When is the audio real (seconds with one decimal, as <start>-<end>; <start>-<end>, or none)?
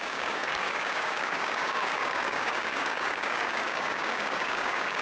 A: none